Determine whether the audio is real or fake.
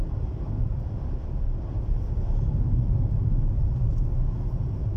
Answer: real